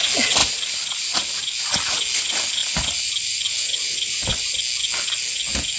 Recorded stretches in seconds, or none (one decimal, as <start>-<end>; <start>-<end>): 0.0-0.4; 1.9-2.6; 4.6-5.8